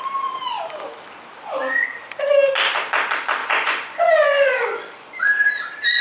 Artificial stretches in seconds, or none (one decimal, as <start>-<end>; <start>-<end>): 3.4-5.2